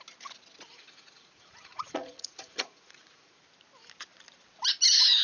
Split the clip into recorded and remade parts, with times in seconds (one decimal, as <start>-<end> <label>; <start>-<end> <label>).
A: 0.0-0.7 recorded; 0.7-3.4 remade; 3.4-5.2 recorded